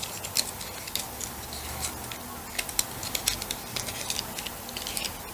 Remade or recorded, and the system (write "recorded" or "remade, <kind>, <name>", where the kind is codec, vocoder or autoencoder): recorded